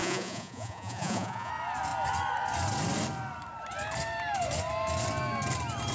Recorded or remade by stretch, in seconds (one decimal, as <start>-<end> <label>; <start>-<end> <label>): 0.0-1.5 remade; 1.5-5.9 recorded